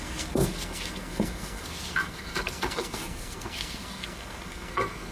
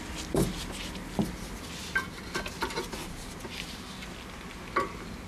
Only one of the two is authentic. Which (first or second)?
second